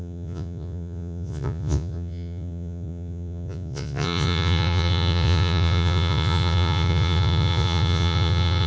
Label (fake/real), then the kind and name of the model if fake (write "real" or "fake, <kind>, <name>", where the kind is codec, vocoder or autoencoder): fake, vocoder, Vocos